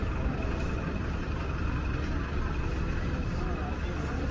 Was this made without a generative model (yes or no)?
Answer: yes